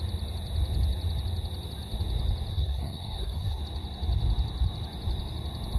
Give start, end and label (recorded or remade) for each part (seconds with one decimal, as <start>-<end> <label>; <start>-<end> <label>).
0.0-2.5 recorded; 2.5-3.6 remade; 3.6-5.8 recorded